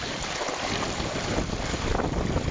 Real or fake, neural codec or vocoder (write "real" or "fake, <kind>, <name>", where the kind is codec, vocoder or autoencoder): real